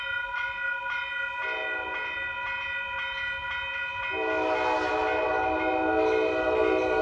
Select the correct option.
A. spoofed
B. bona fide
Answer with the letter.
B